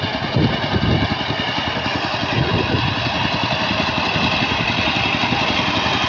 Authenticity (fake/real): real